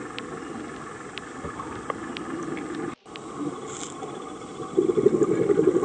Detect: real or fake real